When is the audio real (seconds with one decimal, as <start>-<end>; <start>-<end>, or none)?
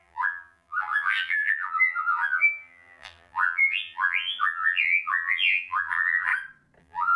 6.3-6.8